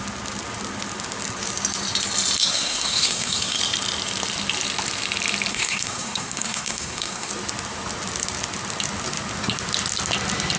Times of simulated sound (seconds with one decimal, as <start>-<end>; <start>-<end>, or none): 2.4-3.6; 5.5-7.3

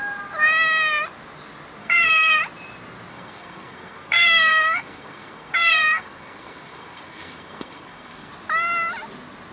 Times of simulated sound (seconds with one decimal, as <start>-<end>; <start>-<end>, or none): 1.8-2.4; 3.1-8.3

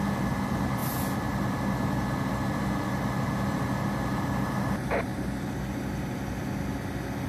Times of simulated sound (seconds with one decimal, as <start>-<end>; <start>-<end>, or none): none

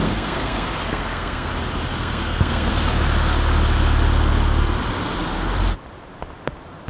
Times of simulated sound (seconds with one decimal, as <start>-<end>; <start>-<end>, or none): 0.0-1.5; 1.9-2.7

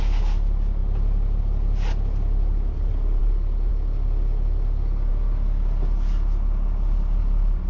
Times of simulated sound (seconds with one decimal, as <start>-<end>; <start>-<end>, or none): none